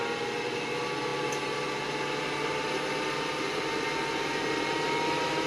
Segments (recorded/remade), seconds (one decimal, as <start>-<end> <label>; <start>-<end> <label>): 0.0-5.5 recorded